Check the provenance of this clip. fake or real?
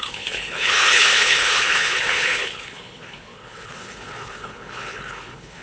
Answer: fake